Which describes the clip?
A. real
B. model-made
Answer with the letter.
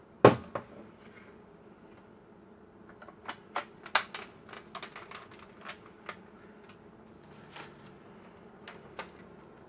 A